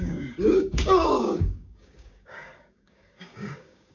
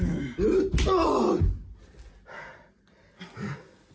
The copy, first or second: first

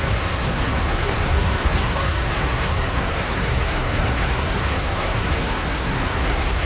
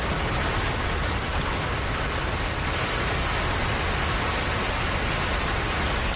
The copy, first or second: first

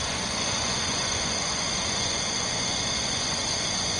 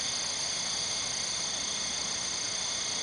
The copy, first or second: first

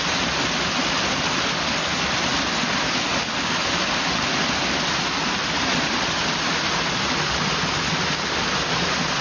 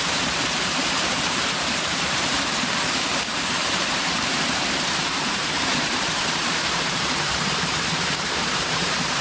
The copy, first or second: second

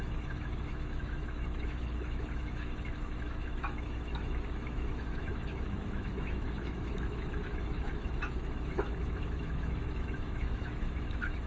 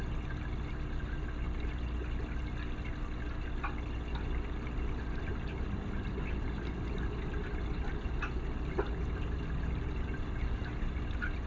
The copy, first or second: first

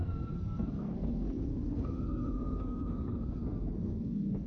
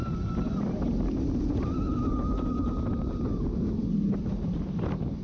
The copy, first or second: first